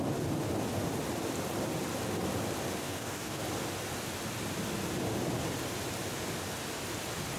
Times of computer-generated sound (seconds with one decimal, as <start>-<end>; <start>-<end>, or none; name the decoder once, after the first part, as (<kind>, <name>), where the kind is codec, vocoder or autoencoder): 2.8-3.4 (codec, DAC)